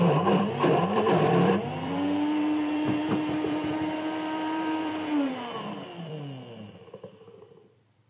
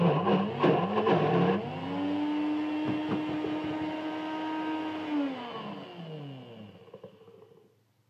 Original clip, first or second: second